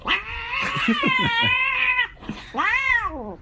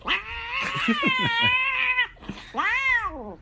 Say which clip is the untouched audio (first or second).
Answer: second